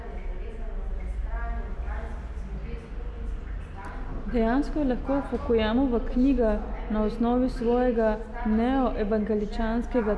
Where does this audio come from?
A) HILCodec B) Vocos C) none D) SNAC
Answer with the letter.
C